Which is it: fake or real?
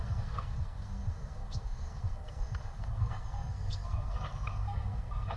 fake